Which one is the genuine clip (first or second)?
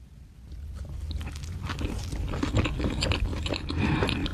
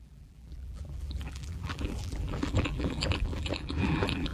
first